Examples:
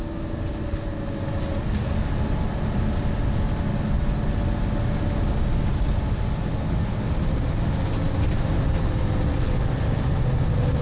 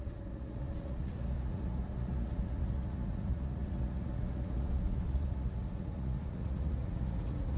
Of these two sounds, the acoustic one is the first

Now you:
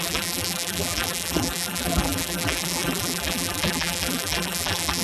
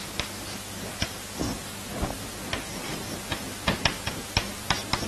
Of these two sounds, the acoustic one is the second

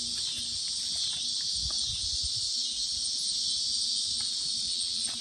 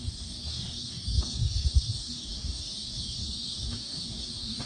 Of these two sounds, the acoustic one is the first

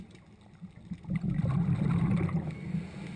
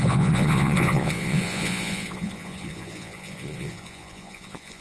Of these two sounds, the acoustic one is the first